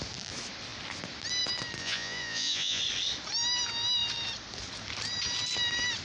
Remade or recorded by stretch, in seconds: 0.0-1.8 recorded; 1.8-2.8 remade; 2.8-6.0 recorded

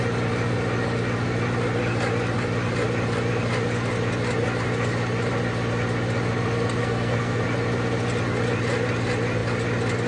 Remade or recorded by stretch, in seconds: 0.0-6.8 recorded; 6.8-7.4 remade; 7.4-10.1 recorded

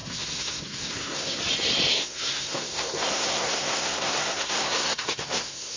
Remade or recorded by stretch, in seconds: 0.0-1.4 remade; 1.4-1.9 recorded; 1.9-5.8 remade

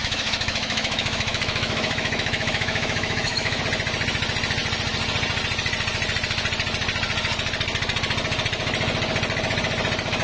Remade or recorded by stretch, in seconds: 0.0-3.6 remade; 3.6-10.2 recorded